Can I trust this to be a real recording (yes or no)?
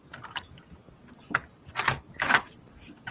yes